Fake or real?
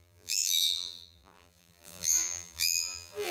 fake